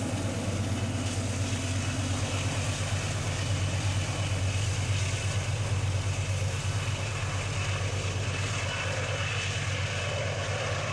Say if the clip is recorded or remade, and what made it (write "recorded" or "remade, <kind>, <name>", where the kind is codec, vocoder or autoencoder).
recorded